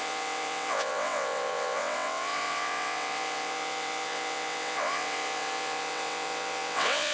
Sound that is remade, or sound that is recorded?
remade